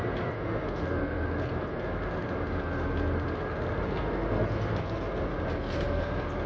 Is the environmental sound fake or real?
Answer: real